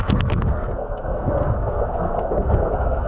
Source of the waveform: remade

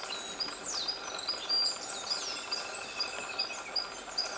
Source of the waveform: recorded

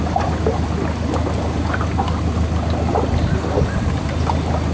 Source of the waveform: recorded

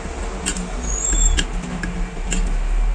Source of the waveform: recorded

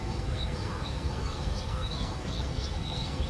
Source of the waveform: remade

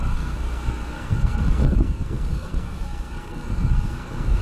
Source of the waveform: remade